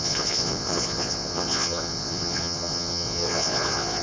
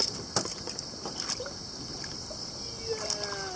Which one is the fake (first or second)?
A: first